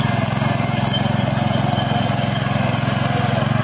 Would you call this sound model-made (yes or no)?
no